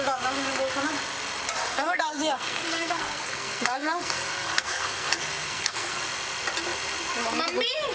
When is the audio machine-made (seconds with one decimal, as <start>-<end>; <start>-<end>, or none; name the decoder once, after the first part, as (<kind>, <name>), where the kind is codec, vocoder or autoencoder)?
1.6-6.0 (codec, SNAC)